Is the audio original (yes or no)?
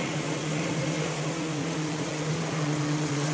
no